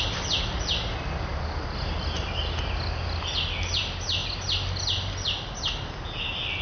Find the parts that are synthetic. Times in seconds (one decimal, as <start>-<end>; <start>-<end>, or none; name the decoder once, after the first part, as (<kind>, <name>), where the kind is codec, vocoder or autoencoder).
none